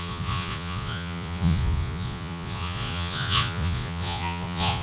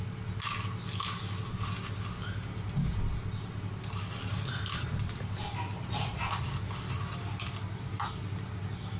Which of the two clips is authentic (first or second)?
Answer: second